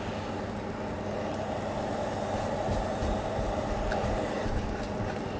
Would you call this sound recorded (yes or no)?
yes